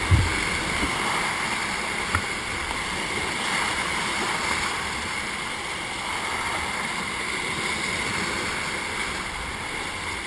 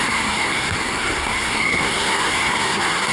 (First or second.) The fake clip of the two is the second